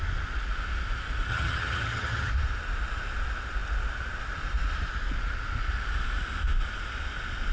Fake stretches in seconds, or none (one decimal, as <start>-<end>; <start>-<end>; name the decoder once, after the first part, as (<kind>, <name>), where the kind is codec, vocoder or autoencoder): 1.3-2.3 (vocoder, HiFi-GAN)